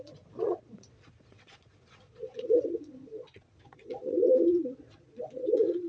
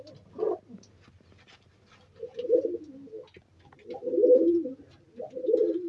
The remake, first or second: first